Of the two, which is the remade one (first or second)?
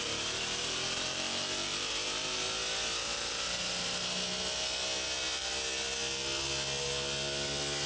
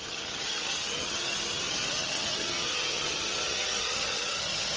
second